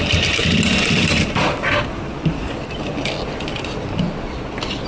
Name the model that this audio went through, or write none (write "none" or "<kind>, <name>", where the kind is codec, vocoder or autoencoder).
none